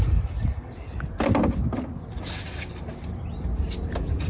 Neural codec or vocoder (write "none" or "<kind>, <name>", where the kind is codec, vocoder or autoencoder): none